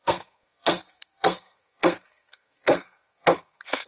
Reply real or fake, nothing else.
fake